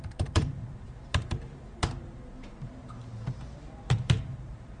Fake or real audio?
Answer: fake